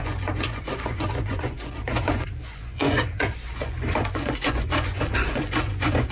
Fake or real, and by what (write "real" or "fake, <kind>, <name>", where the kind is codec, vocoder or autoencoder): fake, vocoder, Vocos